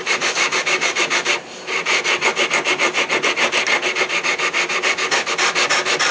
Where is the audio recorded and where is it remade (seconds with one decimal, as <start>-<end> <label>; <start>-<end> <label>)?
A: 0.0-2.0 remade; 2.0-6.1 recorded